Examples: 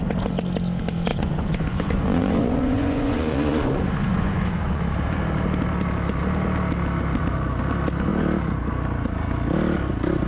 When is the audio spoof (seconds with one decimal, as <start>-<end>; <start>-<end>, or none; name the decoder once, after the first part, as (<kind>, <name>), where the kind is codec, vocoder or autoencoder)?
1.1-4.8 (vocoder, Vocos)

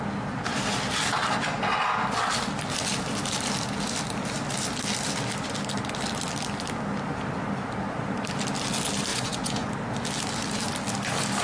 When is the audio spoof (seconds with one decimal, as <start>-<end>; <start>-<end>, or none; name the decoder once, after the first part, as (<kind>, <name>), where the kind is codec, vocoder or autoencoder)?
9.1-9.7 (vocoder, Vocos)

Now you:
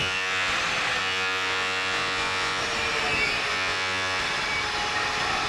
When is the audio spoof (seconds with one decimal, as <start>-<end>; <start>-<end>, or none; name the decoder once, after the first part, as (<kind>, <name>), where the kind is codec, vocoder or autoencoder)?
0.0-0.5 (vocoder, Vocos); 1.0-2.6; 3.5-4.2

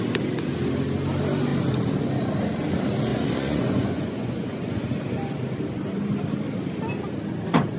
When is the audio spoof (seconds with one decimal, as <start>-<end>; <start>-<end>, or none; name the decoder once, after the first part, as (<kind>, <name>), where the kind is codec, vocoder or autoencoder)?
3.1-4.8 (vocoder, Vocos)

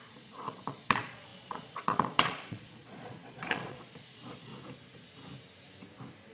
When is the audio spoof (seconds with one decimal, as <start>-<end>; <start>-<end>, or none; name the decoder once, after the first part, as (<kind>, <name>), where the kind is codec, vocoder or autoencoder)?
0.0-4.5 (vocoder, Vocos)

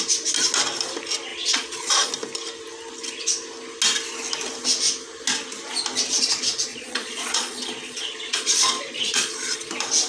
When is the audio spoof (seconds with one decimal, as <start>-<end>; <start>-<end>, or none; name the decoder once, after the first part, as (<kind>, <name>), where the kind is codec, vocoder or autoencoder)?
1.3-2.1 (vocoder, Vocos); 6.7-9.7